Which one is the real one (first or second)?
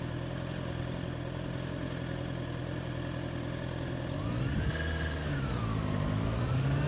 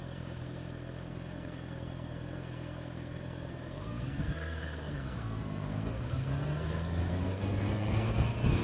first